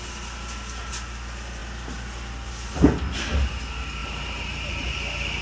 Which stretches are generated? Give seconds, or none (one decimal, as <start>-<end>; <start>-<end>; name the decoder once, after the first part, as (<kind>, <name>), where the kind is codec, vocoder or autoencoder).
4.0-4.7 (vocoder, BigVGAN v2)